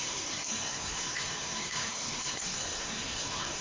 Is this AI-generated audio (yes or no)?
yes